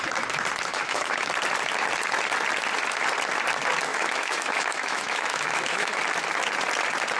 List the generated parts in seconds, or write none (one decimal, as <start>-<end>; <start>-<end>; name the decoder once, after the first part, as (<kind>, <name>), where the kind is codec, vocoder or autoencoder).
0.7-1.3 (autoencoder, DAC-VAE); 3.9-6.0